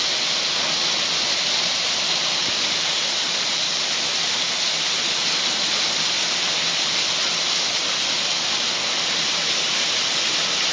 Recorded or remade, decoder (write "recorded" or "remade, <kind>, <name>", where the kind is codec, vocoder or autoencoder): recorded